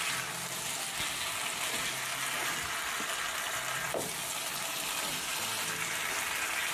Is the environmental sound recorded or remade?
recorded